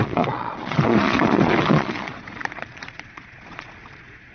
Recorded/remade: remade